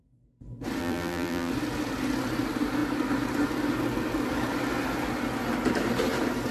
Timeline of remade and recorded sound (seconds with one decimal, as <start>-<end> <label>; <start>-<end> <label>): 0.0-0.8 recorded; 0.8-1.5 remade; 1.5-6.5 recorded